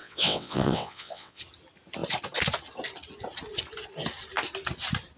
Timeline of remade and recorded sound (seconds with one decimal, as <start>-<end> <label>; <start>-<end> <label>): 0.0-1.4 remade; 1.4-5.2 recorded